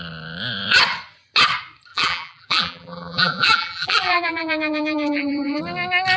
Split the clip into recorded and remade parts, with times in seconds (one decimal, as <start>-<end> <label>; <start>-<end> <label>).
0.0-1.9 recorded; 1.9-5.6 remade; 5.6-6.2 recorded